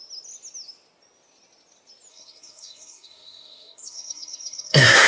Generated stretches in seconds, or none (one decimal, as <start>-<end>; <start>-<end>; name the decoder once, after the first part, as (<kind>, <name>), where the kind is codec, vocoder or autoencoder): 2.1-5.1 (codec, SNAC)